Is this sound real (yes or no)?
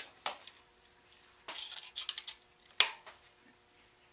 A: yes